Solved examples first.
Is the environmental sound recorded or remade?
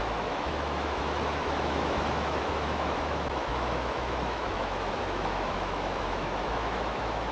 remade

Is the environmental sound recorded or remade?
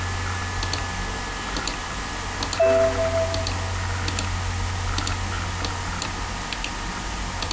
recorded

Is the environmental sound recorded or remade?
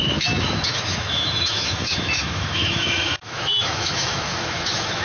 remade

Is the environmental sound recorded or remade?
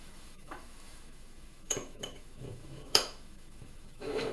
remade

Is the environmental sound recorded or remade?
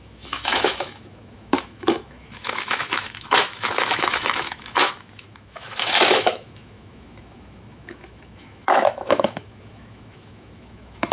remade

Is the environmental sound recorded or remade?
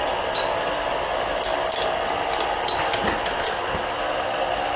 recorded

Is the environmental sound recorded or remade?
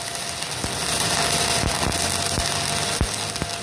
recorded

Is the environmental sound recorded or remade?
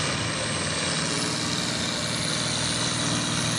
recorded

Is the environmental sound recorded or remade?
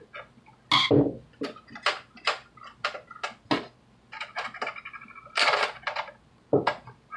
recorded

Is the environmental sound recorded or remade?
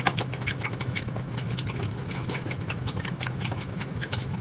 remade